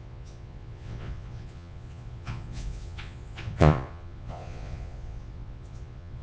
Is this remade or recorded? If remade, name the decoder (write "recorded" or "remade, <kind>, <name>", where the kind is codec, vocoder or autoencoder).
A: remade, vocoder, Vocos